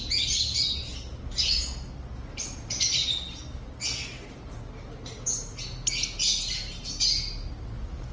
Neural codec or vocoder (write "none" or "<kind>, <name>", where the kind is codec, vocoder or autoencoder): none